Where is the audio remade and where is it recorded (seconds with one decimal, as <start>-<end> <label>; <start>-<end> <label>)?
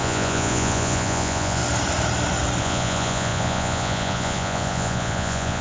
0.0-1.6 remade; 1.6-2.6 recorded; 2.6-5.6 remade